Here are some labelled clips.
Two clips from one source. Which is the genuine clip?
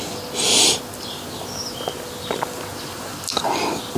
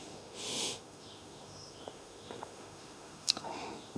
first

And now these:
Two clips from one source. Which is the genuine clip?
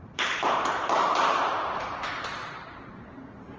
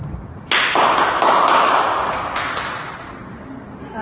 second